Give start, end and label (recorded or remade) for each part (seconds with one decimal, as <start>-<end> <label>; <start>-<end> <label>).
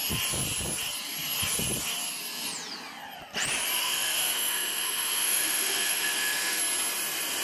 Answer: 0.0-3.8 recorded; 3.8-6.6 remade; 6.6-7.4 recorded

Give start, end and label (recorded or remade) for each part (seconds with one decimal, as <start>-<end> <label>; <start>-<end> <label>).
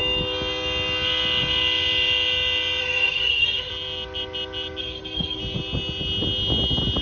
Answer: 0.0-2.8 recorded; 2.8-3.7 remade; 3.7-4.8 recorded; 4.8-5.4 remade; 5.4-7.0 recorded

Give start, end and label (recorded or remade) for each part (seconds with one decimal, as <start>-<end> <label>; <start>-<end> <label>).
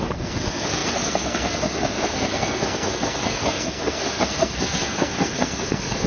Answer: 0.0-6.1 remade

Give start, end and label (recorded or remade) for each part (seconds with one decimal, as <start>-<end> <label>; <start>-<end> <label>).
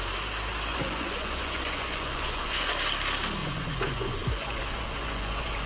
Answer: 0.0-0.7 recorded; 0.7-2.7 remade; 2.7-3.4 recorded; 3.4-5.7 remade